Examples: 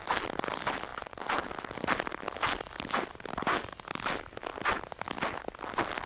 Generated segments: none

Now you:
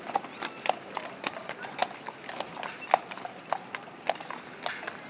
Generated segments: none

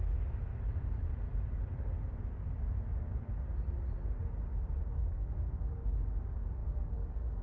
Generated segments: 0.0-0.5 (codec, DAC); 4.9-7.4

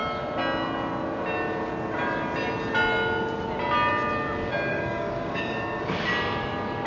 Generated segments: 4.7-5.8 (codec, DAC)

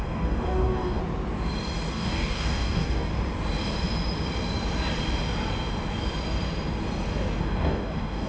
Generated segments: 0.0-1.0 (codec, DAC); 1.9-3.1; 7.4-8.3

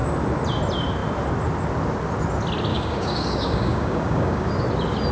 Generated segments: 2.7-4.5 (codec, DAC)

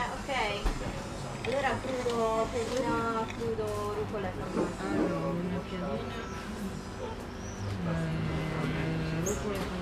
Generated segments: 1.9-2.8 (codec, DAC)

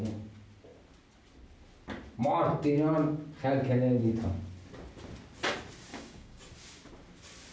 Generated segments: 5.9-6.4 (codec, DAC)